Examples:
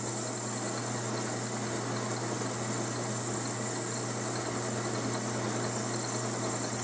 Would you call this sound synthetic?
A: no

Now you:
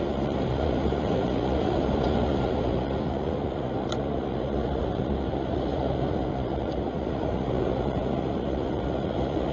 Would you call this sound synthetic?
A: yes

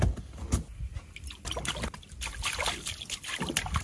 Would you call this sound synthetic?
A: no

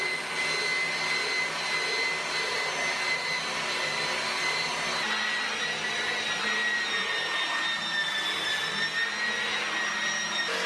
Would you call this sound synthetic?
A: no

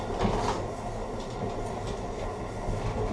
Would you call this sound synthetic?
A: no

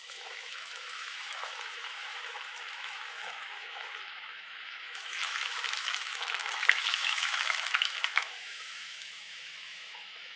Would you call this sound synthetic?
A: yes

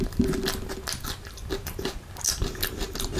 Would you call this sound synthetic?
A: no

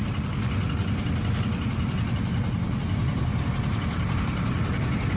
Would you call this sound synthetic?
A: no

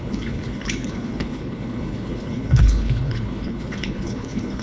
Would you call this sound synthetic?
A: yes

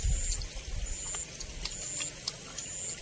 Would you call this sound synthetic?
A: no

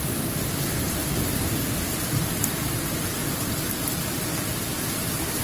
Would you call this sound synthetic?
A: no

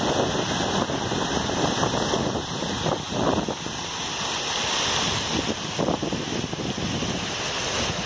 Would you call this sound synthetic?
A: no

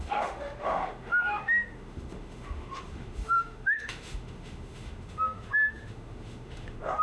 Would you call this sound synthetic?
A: yes